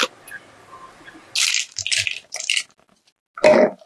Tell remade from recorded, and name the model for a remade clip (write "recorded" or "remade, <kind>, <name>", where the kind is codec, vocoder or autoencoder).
recorded